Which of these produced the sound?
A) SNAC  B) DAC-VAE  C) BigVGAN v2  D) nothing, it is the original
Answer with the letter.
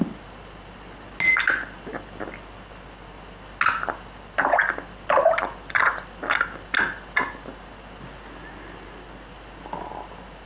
D